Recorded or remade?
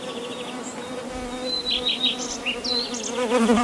recorded